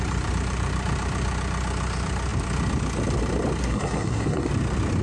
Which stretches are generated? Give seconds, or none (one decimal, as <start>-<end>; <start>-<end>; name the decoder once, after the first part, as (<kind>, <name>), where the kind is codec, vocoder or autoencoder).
3.6-4.5 (codec, SNAC)